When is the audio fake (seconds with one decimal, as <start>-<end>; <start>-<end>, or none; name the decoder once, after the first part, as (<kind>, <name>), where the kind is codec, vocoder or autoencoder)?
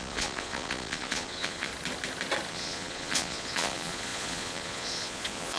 0.0-1.7 (vocoder, Vocos); 2.5-5.6